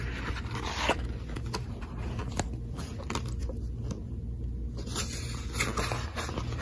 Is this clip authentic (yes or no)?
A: yes